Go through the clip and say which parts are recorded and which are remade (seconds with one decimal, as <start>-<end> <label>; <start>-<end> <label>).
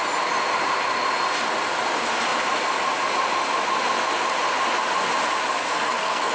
0.0-5.6 recorded; 5.6-6.3 remade